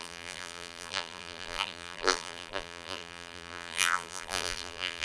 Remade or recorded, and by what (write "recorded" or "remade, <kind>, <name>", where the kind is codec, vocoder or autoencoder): remade, vocoder, BigVGAN v2